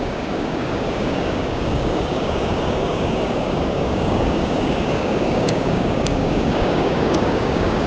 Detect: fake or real fake